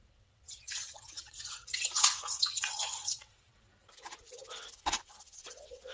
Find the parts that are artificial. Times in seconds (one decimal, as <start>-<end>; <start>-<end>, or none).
0.0-3.7; 4.7-5.9